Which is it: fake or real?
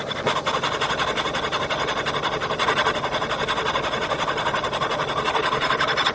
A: real